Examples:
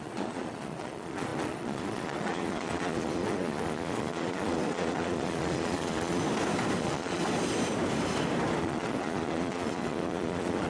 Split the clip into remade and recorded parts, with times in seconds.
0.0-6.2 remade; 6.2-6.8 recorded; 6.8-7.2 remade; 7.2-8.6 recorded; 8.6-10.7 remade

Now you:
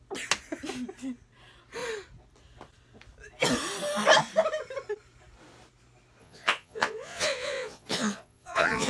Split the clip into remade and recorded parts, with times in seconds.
0.0-6.2 recorded; 6.2-8.9 remade

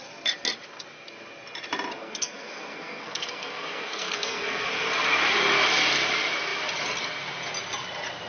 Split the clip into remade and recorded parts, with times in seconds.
0.0-2.0 recorded; 2.0-4.7 remade; 4.7-8.3 recorded

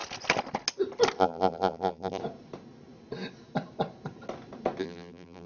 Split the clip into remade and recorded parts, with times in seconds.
0.0-1.2 recorded; 1.2-2.2 remade; 2.2-4.8 recorded; 4.8-5.5 remade

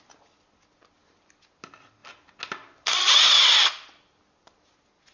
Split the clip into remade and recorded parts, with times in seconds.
0.0-5.1 recorded

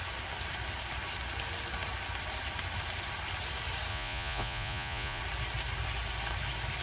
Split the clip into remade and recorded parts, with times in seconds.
0.0-3.9 recorded; 3.9-5.2 remade; 5.2-6.8 recorded